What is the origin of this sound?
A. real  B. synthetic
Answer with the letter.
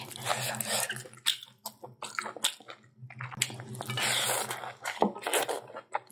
A